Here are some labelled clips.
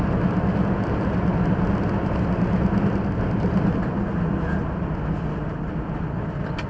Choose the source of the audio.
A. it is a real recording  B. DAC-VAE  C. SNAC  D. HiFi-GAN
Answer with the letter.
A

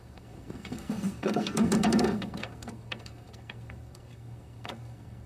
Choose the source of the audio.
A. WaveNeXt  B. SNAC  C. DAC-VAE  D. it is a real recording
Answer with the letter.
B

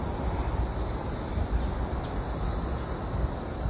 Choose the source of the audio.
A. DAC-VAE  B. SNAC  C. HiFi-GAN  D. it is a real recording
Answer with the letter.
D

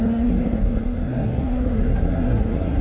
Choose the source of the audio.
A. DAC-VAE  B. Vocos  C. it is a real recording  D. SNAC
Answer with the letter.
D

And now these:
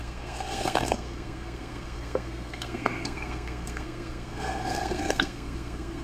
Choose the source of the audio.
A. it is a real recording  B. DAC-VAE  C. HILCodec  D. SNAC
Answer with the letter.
D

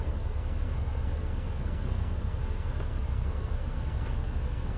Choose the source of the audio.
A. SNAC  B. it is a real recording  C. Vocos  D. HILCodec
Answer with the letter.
A